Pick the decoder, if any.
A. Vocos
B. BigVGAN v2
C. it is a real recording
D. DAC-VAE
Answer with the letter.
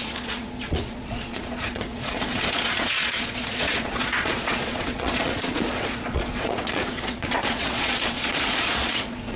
A